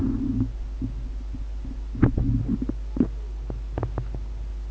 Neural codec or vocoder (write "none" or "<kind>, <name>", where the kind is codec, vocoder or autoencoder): none